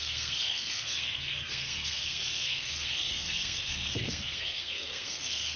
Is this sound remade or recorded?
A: remade